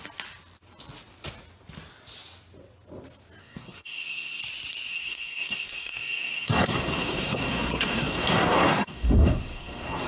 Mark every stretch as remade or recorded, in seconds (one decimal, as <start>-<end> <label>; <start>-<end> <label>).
0.0-3.4 recorded; 3.4-4.4 remade; 4.4-4.9 recorded; 4.9-10.1 remade